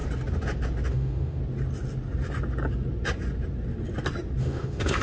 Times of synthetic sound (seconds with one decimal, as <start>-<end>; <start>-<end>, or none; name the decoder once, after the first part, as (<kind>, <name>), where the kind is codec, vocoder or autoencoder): 0.9-1.4 (autoencoder, DAC-VAE); 4.4-5.0